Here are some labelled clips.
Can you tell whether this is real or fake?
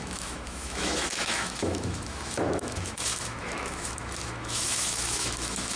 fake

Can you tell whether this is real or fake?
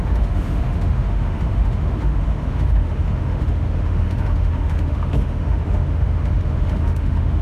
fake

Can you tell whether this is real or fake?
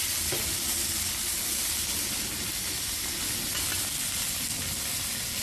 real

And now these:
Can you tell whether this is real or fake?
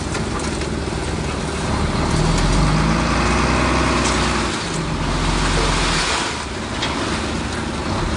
real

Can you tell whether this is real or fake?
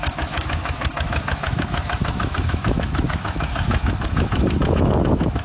fake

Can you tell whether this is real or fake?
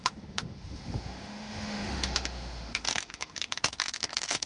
fake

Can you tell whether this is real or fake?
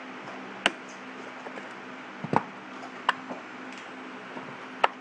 real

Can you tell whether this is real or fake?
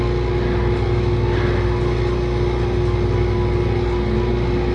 real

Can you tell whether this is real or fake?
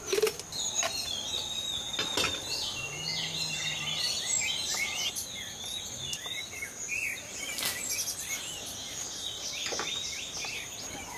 real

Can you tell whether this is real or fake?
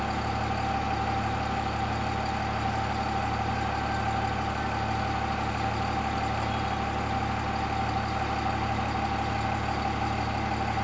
real